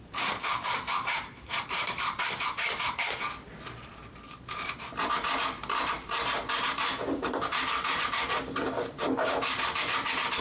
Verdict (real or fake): fake